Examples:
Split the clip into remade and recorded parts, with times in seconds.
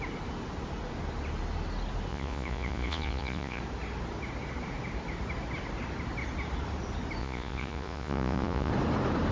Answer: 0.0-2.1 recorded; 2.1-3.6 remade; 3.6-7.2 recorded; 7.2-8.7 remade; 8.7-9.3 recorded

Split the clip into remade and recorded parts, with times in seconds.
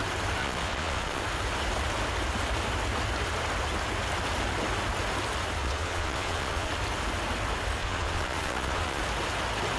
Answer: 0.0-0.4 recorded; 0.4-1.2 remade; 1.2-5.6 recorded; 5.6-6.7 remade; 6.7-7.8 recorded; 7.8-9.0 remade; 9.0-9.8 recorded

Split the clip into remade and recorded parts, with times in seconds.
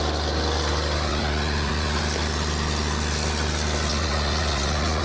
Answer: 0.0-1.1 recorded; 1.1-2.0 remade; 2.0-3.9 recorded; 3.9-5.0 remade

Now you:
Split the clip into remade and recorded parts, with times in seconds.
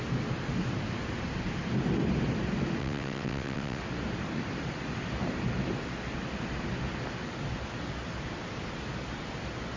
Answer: 0.0-2.8 recorded; 2.8-3.8 remade; 3.8-9.8 recorded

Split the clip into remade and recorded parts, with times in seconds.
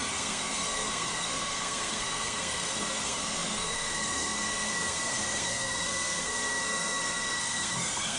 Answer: 0.0-8.2 remade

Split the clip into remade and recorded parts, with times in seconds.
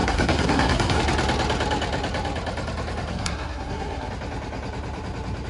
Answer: 0.0-1.0 remade; 1.0-3.1 recorded; 3.1-4.1 remade; 4.1-5.5 recorded